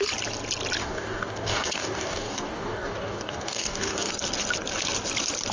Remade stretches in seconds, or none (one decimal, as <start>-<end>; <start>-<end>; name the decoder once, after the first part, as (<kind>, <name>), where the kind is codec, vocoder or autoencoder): 0.8-4.1 (codec, DAC)